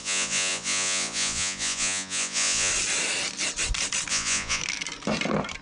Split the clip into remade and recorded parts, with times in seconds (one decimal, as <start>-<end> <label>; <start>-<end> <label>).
0.0-2.7 remade; 2.7-4.1 recorded; 4.1-4.6 remade; 4.6-5.6 recorded